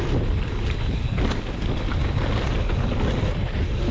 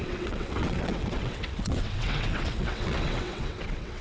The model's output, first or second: second